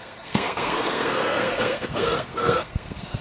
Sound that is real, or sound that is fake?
fake